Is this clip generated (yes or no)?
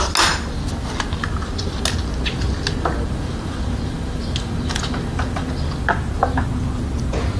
no